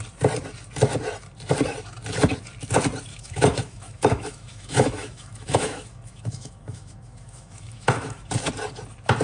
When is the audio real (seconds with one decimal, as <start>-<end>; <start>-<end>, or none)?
0.0-3.1; 8.3-9.2